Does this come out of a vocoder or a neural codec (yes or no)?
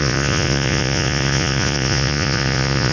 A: yes